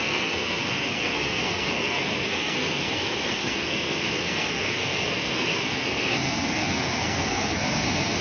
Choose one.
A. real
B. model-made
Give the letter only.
B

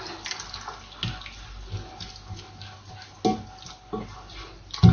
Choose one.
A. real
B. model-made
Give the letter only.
A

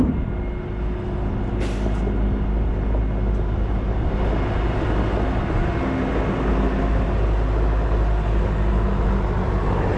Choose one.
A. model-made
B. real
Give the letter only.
B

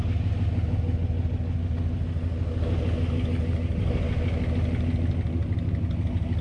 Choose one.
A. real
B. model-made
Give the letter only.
A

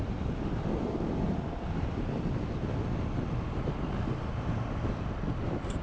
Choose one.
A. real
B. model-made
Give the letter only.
A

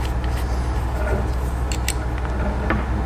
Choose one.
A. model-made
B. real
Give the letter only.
B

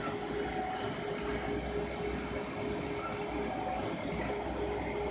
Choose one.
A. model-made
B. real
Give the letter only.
B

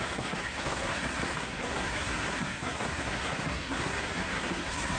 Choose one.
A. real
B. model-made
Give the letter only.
B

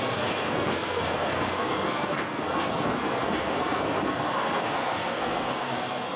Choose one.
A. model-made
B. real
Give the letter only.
A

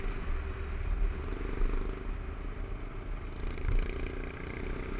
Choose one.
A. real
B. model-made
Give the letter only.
A